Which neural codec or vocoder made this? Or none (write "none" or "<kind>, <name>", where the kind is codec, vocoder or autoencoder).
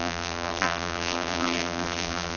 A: vocoder, BigVGAN v2